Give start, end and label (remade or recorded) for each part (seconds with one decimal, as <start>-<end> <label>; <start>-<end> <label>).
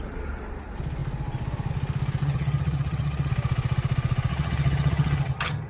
0.0-2.2 recorded; 2.2-3.3 remade; 3.3-4.3 recorded; 4.3-5.7 remade